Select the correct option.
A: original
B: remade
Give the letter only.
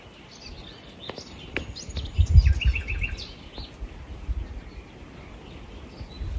A